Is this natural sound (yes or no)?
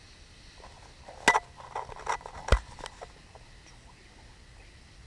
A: yes